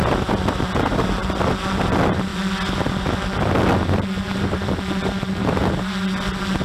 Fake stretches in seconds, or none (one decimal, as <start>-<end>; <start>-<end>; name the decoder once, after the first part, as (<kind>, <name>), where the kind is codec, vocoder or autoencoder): none